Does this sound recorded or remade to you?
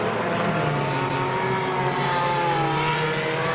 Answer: recorded